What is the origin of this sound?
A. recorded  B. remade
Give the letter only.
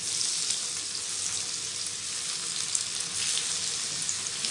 A